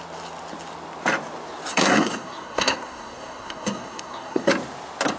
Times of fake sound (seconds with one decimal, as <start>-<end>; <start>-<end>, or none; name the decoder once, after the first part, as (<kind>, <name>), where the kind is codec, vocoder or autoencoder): 1.7-4.5 (codec, SNAC)